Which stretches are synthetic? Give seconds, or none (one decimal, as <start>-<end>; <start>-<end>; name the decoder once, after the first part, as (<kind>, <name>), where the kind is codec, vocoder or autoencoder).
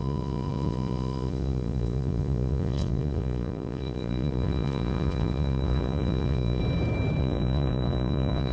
0.0-6.6 (vocoder, Vocos); 7.2-8.5